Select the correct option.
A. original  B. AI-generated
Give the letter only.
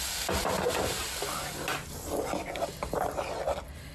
A